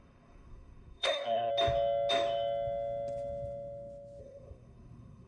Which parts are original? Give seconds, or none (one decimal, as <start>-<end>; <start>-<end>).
1.5-4.2